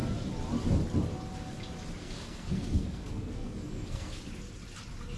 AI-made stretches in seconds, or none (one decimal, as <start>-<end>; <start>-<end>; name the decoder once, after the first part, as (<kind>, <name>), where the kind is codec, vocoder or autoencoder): 2.0-4.2 (codec, SNAC)

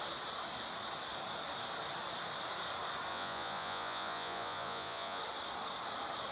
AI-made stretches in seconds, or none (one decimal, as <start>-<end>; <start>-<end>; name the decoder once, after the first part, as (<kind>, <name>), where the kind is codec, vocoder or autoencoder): 3.1-5.2 (vocoder, Vocos)

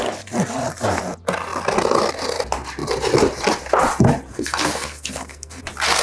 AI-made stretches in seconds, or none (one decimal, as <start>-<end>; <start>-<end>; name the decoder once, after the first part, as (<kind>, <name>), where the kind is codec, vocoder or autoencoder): 4.3-5.6 (codec, SNAC)

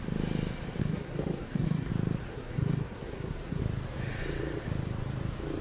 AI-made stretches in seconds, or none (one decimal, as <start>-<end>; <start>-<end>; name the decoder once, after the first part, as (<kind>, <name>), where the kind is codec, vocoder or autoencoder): 0.8-1.9 (codec, SNAC); 2.3-3.6

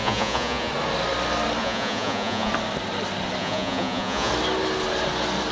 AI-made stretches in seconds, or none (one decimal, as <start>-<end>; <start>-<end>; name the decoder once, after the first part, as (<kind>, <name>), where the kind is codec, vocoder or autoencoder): 0.0-0.7 (vocoder, Vocos); 1.6-2.5; 3.4-4.3

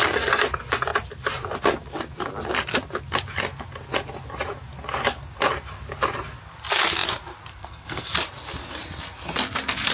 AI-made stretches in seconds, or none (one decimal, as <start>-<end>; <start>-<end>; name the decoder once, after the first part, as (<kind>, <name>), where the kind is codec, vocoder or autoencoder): 7.5-8.1 (codec, SNAC)

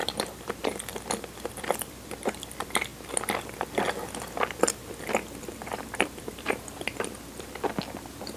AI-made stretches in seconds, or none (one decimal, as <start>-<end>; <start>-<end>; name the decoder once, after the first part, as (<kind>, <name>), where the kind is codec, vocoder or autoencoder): 0.0-2.9 (vocoder, BigVGAN v2); 5.4-8.4

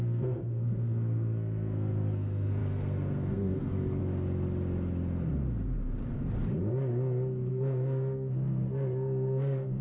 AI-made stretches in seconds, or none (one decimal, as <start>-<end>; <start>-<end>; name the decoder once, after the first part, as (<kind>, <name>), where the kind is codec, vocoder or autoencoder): 0.0-4.0 (codec, SNAC); 7.5-9.8